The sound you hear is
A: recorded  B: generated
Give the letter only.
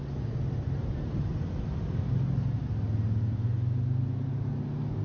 A